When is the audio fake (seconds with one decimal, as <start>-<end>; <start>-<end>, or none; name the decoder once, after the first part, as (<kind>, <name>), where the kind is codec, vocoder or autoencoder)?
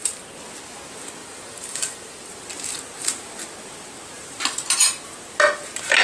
1.2-2.3 (vocoder, BigVGAN v2)